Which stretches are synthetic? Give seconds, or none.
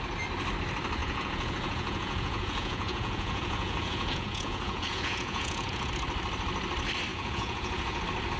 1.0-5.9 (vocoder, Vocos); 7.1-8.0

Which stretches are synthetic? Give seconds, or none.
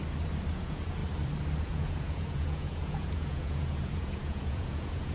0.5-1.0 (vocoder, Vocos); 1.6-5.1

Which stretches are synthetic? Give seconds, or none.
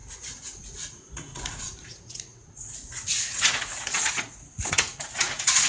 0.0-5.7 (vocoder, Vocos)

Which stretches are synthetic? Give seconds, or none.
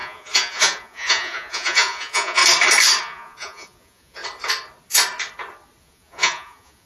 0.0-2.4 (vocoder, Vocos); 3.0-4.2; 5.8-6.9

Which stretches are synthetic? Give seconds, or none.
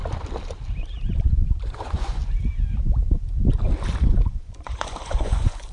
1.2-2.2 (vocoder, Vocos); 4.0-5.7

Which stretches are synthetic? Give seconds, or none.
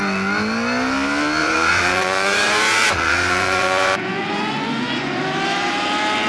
1.4-5.2 (vocoder, Vocos)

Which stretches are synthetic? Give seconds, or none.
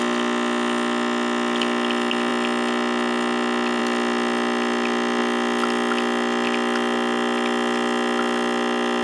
none